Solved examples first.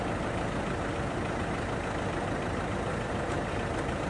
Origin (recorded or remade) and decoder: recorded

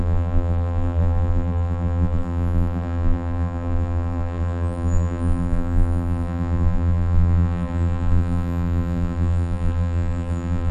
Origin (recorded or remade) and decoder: remade, vocoder, BigVGAN v2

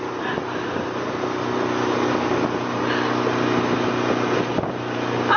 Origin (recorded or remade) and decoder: recorded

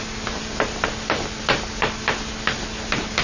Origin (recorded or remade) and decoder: recorded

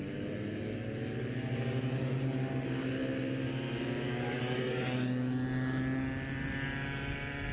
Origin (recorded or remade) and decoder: recorded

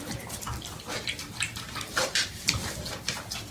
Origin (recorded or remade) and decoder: remade, vocoder, BigVGAN v2